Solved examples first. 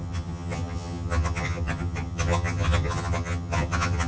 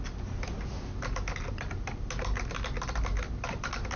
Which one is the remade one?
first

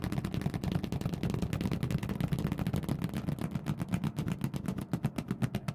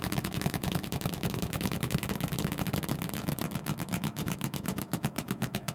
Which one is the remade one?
second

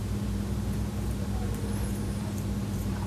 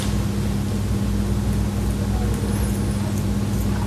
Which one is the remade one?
first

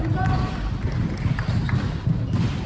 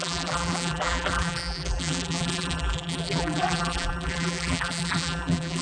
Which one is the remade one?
second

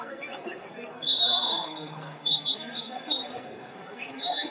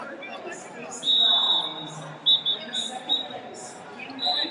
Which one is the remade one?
first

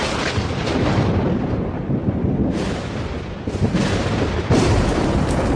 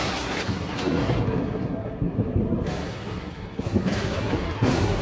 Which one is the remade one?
second